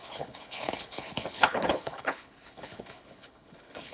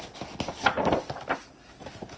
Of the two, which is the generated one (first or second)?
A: first